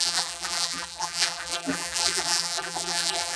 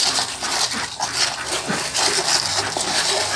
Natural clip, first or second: second